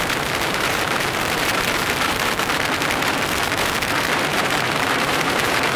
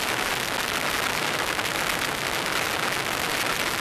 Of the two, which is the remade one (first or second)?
first